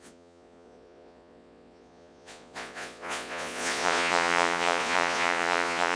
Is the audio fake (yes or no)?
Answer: yes